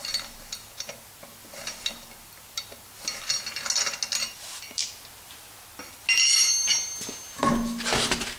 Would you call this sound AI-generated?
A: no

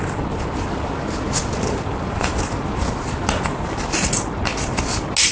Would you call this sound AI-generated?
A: no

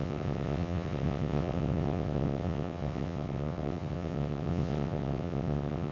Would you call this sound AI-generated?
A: yes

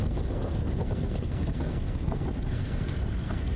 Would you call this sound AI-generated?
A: yes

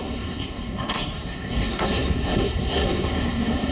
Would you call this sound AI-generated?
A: yes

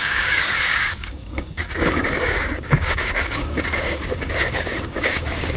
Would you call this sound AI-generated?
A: yes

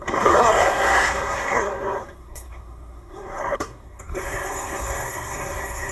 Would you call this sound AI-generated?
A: yes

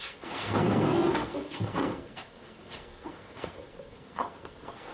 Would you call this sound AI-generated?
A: yes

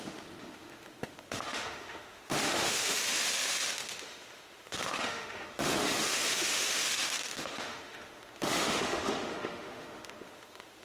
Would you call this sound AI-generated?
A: yes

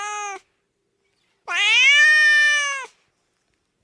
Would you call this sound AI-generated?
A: no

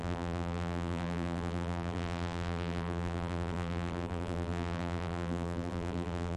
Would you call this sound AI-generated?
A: yes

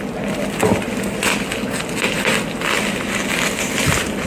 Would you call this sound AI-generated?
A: no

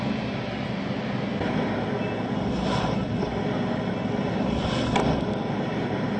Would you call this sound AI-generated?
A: no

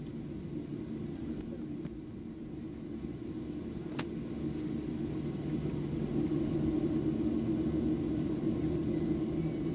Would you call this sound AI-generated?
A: no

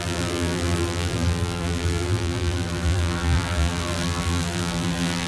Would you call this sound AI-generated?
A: yes